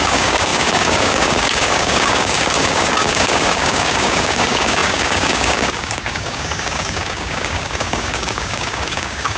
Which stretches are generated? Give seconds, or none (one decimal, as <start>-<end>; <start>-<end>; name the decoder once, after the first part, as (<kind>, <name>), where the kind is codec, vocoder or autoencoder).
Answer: 0.0-9.4 (codec, DAC)